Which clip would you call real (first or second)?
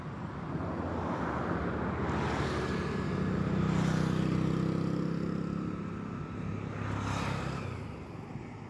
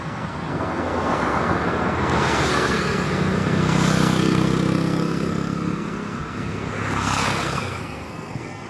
first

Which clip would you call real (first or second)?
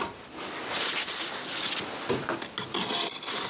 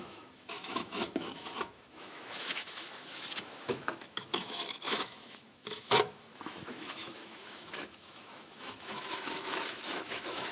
first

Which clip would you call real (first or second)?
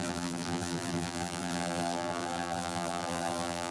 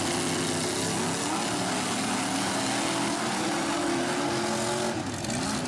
second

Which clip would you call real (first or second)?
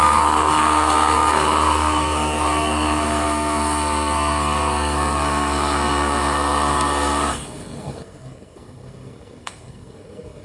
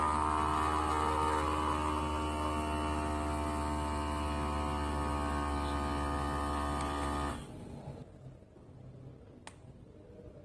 second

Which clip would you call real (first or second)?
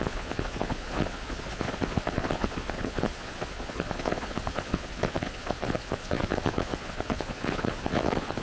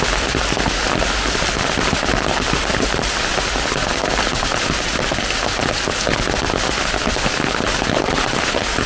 second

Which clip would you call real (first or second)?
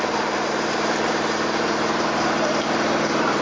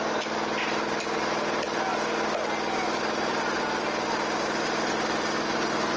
second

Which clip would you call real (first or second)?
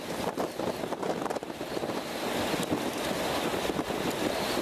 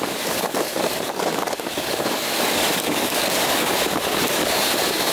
first